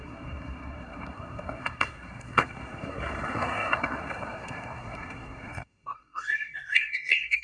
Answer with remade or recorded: remade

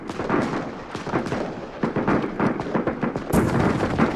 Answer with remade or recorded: recorded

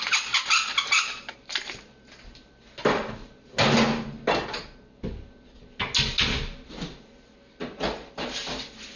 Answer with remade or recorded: recorded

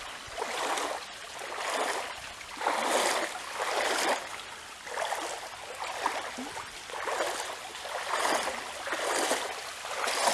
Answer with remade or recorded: recorded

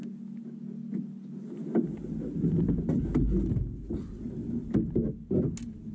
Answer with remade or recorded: recorded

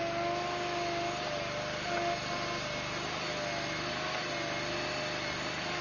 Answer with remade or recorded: recorded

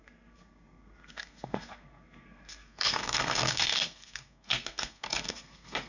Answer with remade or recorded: remade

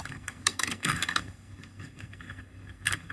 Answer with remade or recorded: remade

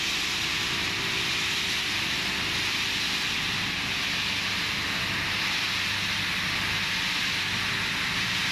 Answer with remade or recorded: recorded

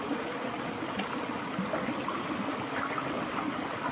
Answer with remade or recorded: recorded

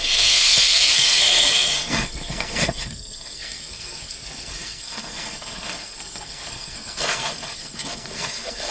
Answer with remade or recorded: remade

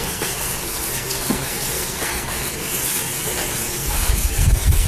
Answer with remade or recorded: remade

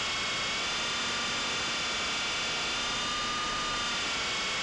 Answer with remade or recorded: recorded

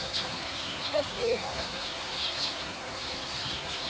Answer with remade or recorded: remade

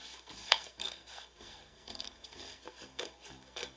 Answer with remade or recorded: remade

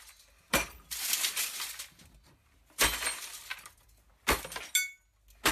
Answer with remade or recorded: recorded